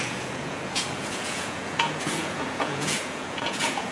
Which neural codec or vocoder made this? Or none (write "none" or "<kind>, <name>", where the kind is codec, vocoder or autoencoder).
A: vocoder, Vocos